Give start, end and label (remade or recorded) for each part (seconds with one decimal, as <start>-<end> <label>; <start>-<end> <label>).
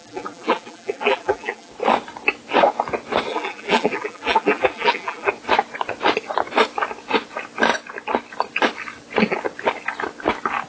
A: 0.0-1.7 remade; 1.7-3.3 recorded; 3.3-5.3 remade; 5.3-10.7 recorded